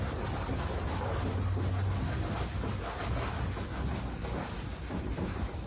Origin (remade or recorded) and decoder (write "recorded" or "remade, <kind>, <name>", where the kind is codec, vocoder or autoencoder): recorded